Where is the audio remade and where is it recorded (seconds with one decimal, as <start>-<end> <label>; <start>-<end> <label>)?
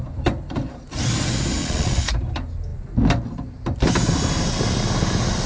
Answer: 0.0-1.6 recorded; 1.6-2.1 remade; 2.1-5.5 recorded